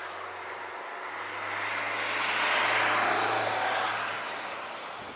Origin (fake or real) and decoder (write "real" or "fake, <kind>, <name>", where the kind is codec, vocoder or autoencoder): real